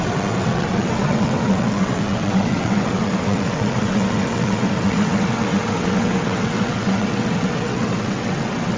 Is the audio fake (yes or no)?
yes